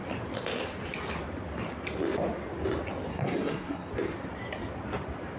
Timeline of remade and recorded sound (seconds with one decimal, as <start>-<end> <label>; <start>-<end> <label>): 0.0-3.1 recorded; 3.1-3.9 remade; 3.9-5.4 recorded